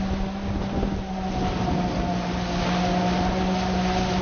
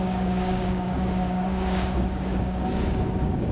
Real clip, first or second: first